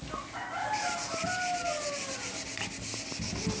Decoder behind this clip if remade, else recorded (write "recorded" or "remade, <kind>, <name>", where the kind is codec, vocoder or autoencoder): recorded